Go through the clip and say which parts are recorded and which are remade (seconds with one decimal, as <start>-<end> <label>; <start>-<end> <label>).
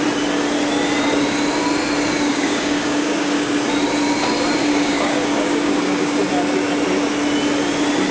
0.0-2.3 recorded; 2.3-3.6 remade; 3.6-4.6 recorded; 4.6-6.2 remade; 6.2-8.1 recorded